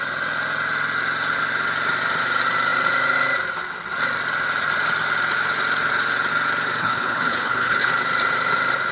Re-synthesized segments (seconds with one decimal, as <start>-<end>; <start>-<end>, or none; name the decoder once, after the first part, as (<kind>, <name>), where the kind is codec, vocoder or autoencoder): 6.8-7.9 (codec, HILCodec)